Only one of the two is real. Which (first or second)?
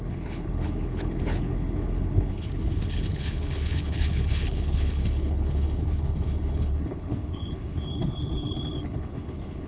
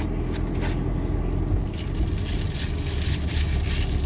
second